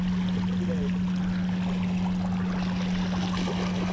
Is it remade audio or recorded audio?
recorded